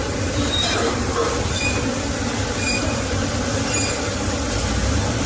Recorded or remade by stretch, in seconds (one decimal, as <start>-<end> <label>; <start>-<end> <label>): 0.0-1.1 remade; 1.1-2.8 recorded; 2.8-3.4 remade; 3.4-5.3 recorded